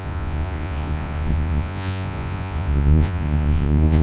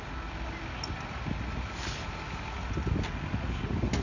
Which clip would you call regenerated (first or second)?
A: first